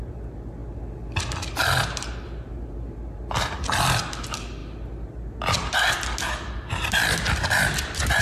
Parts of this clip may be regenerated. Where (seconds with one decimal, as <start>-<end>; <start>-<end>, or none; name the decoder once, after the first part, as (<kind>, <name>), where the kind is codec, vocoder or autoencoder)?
none